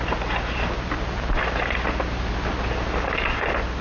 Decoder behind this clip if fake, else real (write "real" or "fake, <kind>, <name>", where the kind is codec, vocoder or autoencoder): real